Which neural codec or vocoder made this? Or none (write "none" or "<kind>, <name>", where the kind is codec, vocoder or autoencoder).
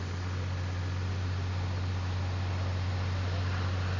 none